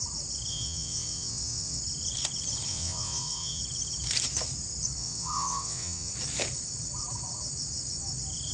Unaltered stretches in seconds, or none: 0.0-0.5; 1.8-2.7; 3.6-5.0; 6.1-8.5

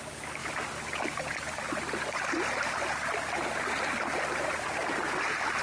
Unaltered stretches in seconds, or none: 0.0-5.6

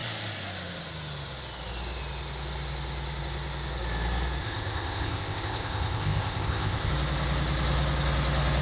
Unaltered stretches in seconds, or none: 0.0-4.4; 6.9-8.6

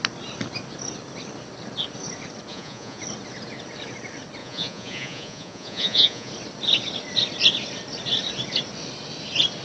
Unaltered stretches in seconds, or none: 0.0-2.5; 3.0-4.4; 6.3-9.6